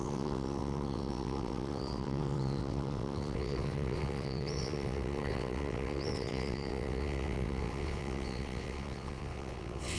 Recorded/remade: remade